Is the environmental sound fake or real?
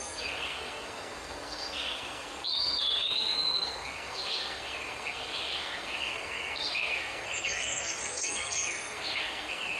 fake